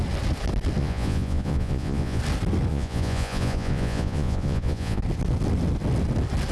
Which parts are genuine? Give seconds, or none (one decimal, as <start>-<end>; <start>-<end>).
0.0-0.8; 2.2-2.7; 5.0-6.5